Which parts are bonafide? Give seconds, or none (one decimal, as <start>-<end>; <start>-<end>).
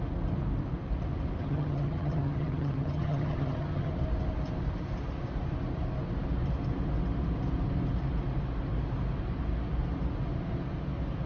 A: 0.0-1.4; 3.9-11.3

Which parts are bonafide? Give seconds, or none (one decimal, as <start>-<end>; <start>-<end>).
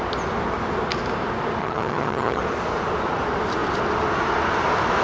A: 0.0-1.6; 2.4-5.0